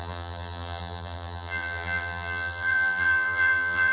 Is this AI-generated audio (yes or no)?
yes